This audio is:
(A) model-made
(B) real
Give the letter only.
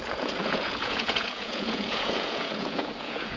A